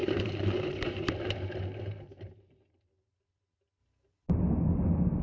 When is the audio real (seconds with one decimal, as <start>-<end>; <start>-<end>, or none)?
2.9-3.8; 4.3-5.2